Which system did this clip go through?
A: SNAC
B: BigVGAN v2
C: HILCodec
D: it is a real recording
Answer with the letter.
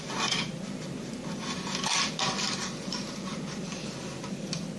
B